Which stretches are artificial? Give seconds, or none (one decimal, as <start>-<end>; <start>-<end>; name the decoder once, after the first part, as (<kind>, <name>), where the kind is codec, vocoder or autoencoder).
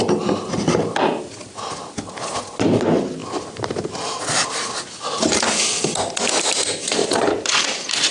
3.2-4.0 (vocoder, BigVGAN v2); 7.0-7.6